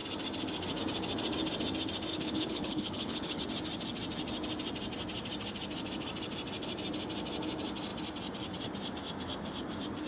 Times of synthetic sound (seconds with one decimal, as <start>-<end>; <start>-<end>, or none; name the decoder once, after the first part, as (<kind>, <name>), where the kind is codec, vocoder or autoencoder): 2.1-3.4 (codec, HILCodec)